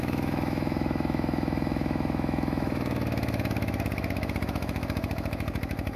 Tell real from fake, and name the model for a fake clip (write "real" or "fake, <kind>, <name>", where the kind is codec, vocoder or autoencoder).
fake, autoencoder, DAC-VAE